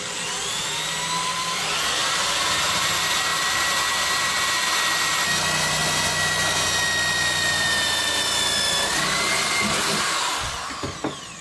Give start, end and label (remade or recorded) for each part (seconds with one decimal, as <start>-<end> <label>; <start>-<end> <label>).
0.0-2.0 recorded; 2.0-2.6 remade; 2.6-3.3 recorded; 3.3-3.8 remade; 3.8-11.4 recorded